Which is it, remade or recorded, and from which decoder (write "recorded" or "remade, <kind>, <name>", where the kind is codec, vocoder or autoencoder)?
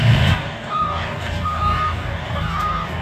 remade, codec, DAC